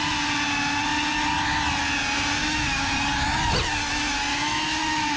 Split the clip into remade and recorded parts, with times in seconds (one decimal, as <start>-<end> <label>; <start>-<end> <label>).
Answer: 0.0-2.4 recorded; 2.4-2.9 remade; 2.9-4.3 recorded; 4.3-5.2 remade